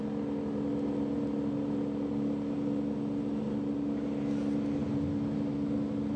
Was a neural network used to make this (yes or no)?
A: no